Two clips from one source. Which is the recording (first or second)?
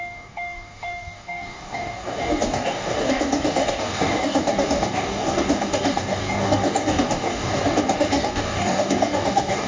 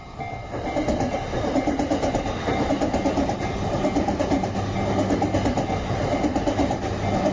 second